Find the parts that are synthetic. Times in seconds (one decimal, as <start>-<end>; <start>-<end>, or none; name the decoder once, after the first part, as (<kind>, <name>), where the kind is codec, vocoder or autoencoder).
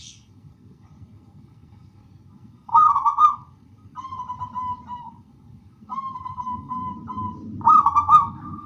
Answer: 0.0-4.1 (codec, SNAC); 5.0-6.8; 7.8-8.7